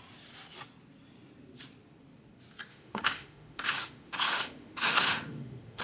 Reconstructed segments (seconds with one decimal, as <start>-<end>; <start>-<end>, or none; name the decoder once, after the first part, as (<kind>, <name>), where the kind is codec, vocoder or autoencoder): 2.7-5.8 (autoencoder, DAC-VAE)